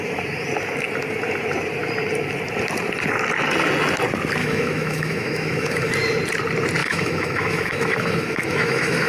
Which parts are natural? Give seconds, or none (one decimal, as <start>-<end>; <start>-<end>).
0.0-4.4; 5.9-6.8